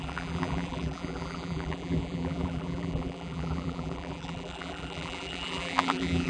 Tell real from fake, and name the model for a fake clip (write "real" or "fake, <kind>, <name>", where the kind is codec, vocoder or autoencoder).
fake, vocoder, BigVGAN v2